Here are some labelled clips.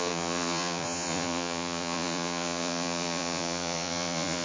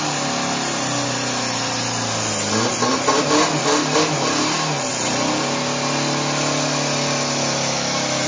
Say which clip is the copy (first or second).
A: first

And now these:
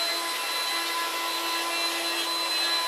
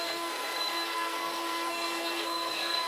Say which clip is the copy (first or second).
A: second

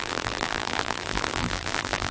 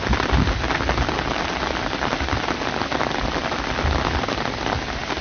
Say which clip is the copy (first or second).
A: first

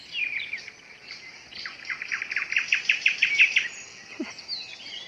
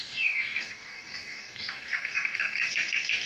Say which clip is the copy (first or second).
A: second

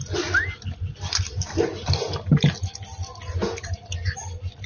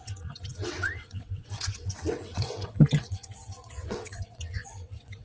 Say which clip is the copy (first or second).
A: second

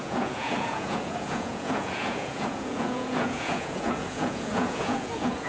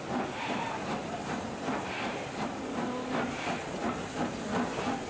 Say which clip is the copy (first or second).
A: first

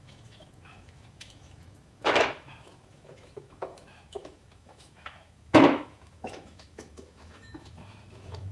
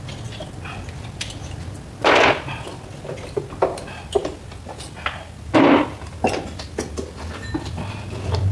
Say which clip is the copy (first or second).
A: first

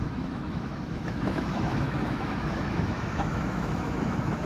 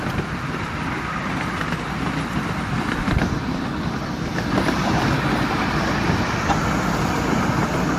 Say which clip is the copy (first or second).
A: first